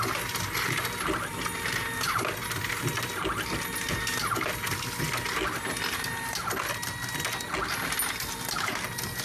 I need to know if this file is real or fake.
real